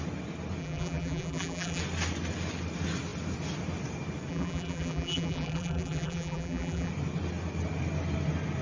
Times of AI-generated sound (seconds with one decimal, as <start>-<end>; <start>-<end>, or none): 0.6-1.8; 4.3-6.9